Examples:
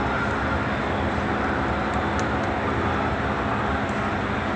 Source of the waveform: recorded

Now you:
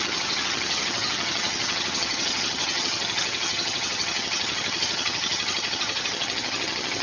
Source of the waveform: remade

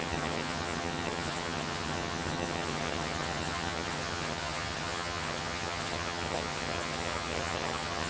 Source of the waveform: remade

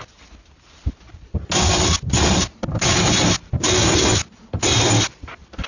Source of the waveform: recorded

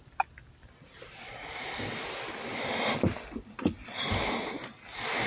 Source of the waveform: recorded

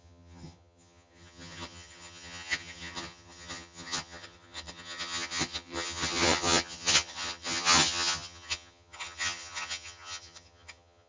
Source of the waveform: remade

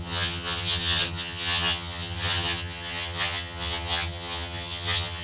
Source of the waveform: remade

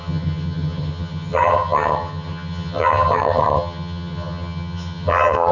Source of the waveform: remade